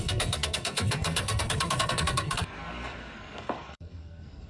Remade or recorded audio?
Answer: remade